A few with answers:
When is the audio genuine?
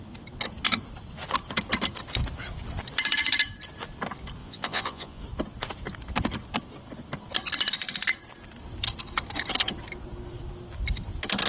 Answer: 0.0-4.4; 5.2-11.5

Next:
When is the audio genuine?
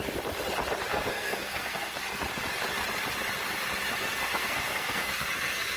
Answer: 0.0-0.9; 2.0-4.0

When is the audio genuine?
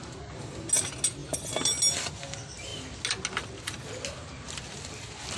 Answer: 0.0-5.4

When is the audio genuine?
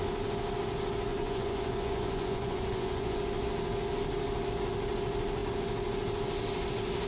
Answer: 0.0-1.1; 3.2-7.1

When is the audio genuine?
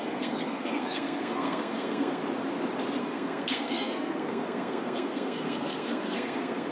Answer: 2.2-3.0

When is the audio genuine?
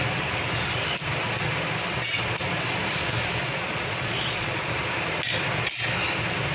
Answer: 0.0-3.4; 4.7-6.5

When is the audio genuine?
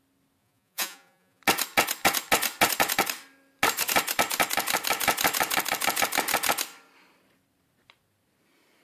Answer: 0.0-0.4; 1.4-8.8